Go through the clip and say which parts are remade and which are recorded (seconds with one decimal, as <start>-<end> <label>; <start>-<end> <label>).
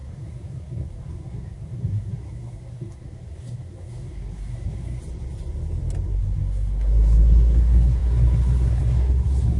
0.0-5.0 remade; 5.0-6.1 recorded; 6.1-9.6 remade